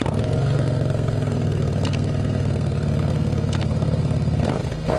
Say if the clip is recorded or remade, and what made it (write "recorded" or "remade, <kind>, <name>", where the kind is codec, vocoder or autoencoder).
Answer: remade, codec, SNAC